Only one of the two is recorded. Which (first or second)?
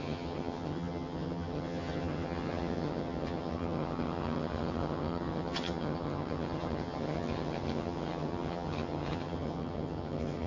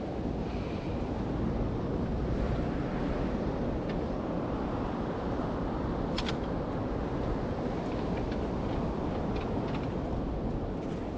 second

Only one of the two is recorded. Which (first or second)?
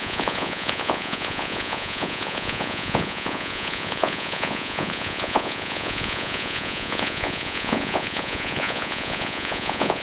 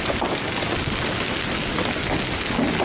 second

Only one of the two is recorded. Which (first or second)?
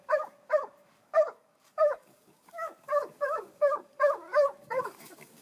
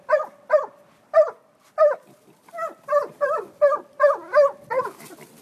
second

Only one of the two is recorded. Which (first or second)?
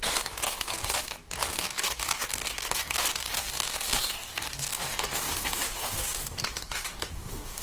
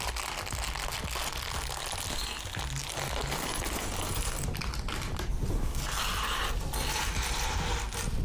second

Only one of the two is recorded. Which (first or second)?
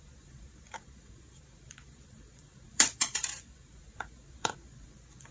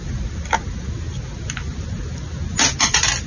second